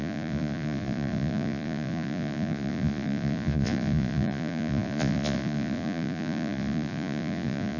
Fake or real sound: fake